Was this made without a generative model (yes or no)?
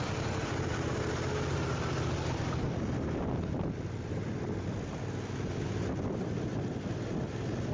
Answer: yes